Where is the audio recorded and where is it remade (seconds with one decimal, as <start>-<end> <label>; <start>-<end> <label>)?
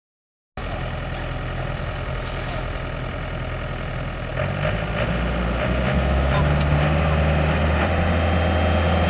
0.0-9.1 recorded